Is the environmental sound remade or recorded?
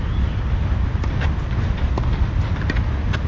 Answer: recorded